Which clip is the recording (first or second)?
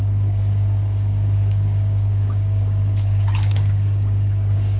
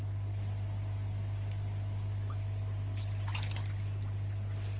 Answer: second